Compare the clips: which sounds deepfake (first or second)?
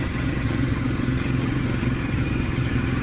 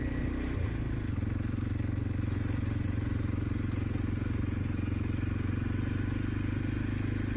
first